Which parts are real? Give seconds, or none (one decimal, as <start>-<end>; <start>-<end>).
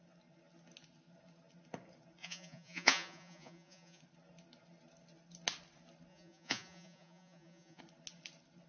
0.0-2.2; 4.0-6.1; 7.8-8.7